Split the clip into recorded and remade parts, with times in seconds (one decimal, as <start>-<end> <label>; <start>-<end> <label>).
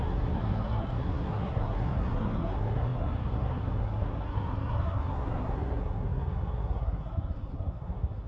0.0-8.3 remade